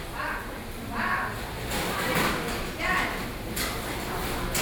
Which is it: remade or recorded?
recorded